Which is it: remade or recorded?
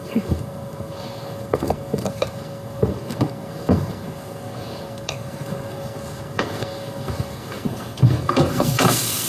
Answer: remade